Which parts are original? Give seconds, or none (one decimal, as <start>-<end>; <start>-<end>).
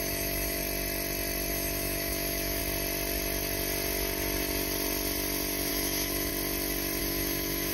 0.6-1.5; 2.6-5.7; 6.3-7.0